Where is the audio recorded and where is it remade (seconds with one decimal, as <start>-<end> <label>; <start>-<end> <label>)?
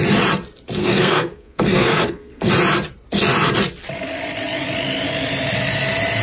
0.0-0.8 recorded; 0.8-2.5 remade; 2.5-6.2 recorded